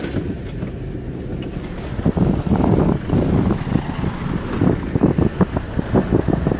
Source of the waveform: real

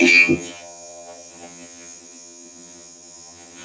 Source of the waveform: fake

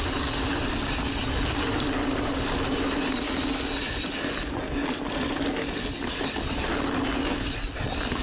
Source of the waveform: real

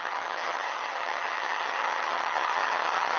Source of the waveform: fake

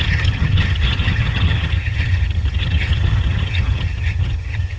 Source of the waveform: fake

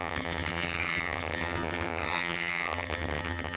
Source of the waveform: fake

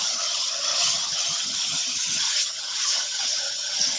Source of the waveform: fake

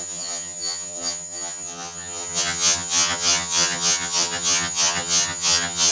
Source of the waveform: fake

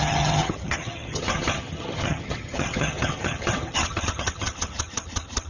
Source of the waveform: fake